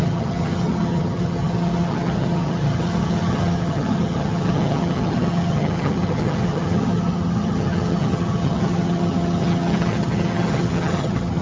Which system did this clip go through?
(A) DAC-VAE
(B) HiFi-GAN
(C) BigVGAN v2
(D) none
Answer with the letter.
B